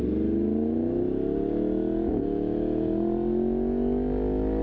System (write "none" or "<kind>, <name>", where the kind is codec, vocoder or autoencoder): none